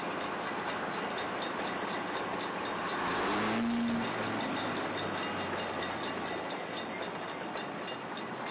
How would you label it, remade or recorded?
recorded